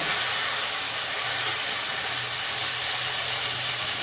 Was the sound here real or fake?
real